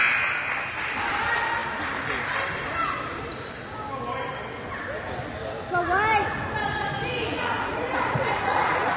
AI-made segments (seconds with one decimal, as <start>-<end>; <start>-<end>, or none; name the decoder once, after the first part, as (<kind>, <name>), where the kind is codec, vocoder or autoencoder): 7.2-9.0 (vocoder, Vocos)